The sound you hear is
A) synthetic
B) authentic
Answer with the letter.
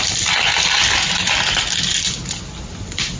B